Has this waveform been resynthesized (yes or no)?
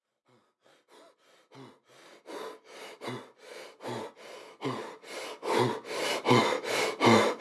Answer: no